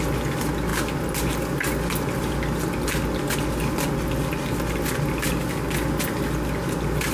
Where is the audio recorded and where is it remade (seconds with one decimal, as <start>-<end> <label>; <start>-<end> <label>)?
0.0-7.1 recorded